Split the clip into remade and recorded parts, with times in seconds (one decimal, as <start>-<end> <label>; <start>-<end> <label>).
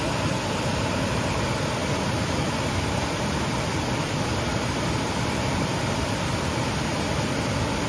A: 0.0-1.8 recorded; 1.8-6.4 remade; 6.4-7.9 recorded